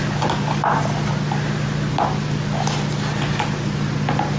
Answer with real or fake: real